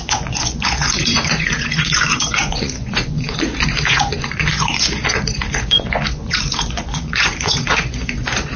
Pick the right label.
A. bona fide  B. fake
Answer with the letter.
B